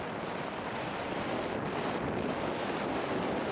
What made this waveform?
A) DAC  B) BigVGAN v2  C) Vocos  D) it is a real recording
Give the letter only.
D